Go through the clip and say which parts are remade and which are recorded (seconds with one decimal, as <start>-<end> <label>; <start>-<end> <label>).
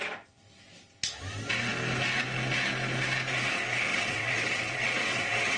0.0-3.9 recorded; 3.9-5.6 remade